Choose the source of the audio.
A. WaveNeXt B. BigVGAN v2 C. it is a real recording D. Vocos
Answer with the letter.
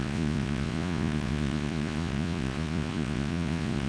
D